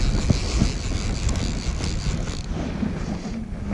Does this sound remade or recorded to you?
recorded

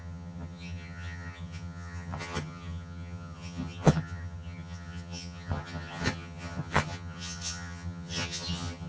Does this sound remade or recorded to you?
remade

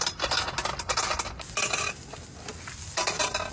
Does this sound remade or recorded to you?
recorded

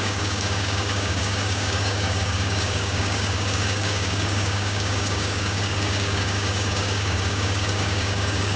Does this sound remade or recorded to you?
remade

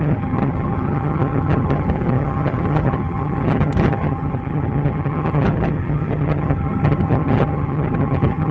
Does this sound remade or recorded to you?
remade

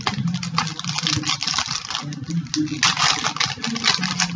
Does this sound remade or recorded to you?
recorded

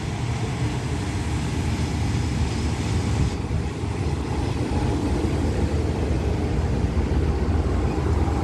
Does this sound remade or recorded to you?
recorded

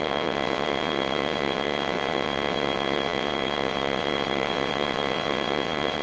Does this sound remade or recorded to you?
remade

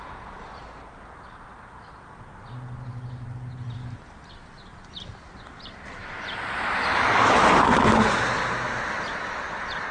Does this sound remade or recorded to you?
recorded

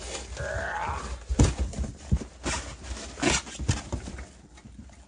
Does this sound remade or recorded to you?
recorded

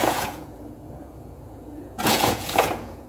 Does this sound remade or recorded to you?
remade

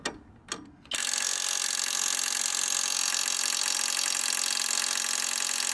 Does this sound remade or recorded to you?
recorded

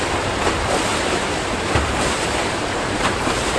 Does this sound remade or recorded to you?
remade